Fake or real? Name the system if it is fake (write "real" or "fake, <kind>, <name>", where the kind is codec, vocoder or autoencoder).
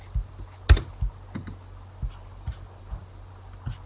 real